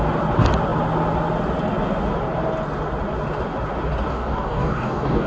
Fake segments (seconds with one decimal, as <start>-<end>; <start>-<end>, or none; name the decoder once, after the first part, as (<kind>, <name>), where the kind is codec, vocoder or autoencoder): 4.1-5.3 (codec, DAC)

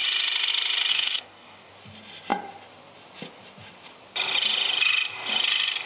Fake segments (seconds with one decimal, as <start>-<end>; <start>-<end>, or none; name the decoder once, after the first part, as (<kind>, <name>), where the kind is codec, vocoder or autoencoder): 0.9-1.7 (codec, DAC)

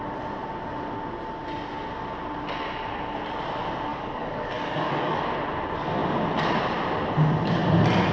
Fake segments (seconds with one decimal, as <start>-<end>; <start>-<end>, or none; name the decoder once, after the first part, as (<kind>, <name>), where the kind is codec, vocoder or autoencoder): 3.9-5.2 (codec, DAC)

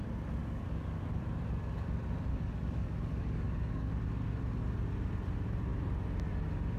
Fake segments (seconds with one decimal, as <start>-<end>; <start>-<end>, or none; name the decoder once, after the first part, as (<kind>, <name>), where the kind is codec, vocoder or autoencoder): 0.4-1.2 (codec, DAC); 2.3-3.9